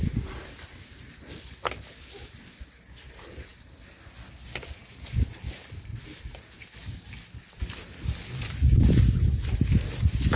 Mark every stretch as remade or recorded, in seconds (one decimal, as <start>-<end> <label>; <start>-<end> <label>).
0.0-10.4 recorded